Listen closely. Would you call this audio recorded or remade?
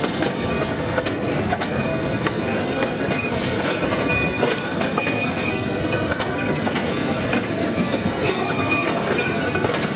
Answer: remade